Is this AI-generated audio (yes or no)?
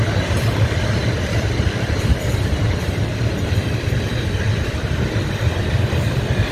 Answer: yes